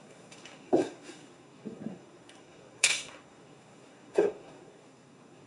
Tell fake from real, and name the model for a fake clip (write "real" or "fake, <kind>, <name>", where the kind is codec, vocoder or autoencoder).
fake, codec, SNAC